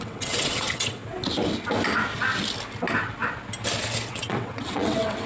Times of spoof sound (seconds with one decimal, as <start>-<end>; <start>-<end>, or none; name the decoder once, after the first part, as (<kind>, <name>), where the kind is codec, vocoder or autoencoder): 0.0-1.0 (vocoder, WaveNeXt); 4.1-5.3